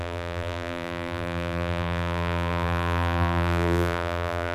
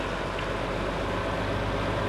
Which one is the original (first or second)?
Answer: second